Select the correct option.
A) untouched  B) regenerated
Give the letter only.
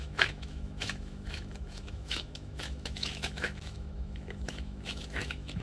B